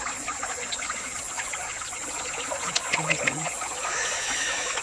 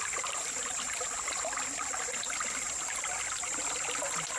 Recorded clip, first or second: second